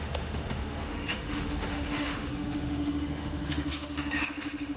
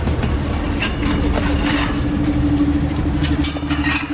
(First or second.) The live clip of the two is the second